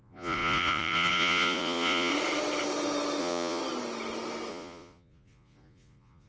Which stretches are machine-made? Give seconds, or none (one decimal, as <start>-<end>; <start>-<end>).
0.0-2.1; 3.2-3.6; 4.5-6.3